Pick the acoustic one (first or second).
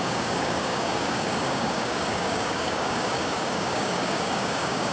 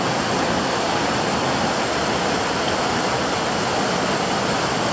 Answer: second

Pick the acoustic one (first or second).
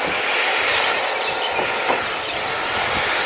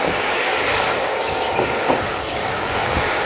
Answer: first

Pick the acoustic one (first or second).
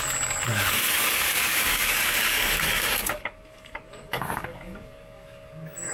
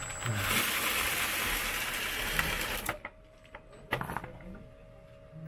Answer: second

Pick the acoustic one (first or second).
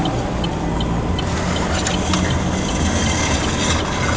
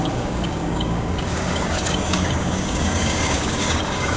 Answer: first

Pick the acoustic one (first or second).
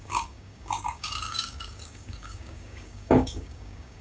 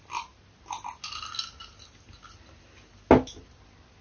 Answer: second